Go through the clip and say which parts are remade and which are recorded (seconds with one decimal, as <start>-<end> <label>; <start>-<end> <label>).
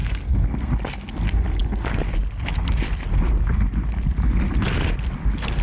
0.0-0.7 remade; 0.7-5.6 recorded